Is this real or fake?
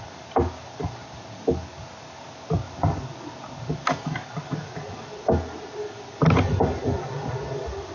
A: real